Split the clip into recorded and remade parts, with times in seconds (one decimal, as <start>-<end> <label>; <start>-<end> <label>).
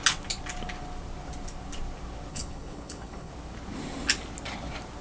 0.0-2.3 recorded; 2.3-3.3 remade; 3.3-5.0 recorded